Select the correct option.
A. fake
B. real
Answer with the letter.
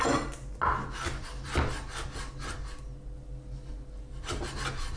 B